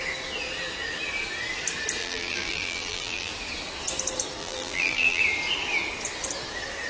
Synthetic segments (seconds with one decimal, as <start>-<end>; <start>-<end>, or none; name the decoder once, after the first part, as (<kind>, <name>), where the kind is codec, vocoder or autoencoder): 2.0-3.3 (vocoder, BigVGAN v2); 4.4-5.2